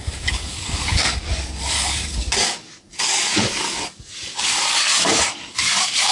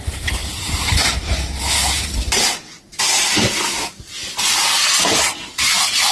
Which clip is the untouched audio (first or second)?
second